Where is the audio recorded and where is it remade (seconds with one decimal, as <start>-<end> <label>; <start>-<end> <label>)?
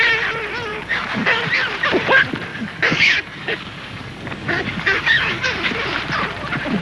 0.0-0.7 recorded; 0.7-1.4 remade; 1.4-2.5 recorded; 2.5-5.7 remade; 5.7-6.8 recorded